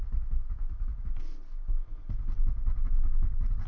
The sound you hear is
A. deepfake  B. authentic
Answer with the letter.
B